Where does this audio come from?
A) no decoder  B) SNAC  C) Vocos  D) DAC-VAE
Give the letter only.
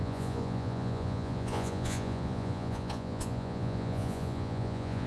C